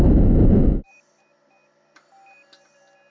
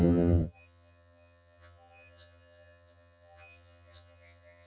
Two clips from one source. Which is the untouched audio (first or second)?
first